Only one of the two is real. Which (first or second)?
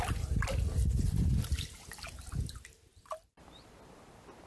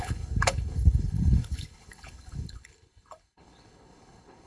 first